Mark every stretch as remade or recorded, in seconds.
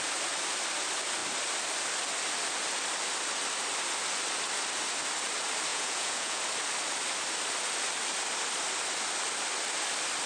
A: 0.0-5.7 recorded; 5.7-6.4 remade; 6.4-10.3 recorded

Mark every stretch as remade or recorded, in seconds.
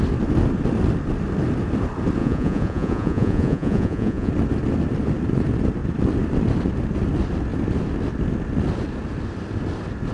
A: 0.0-2.2 recorded; 2.2-4.3 remade; 4.3-10.1 recorded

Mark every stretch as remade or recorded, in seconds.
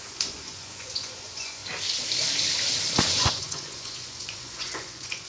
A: 0.0-1.6 remade; 1.6-3.1 recorded; 3.1-5.3 remade